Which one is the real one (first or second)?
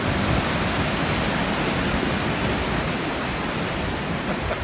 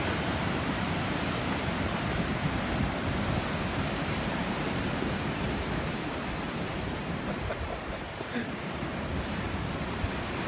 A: first